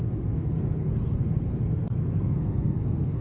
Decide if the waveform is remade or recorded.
remade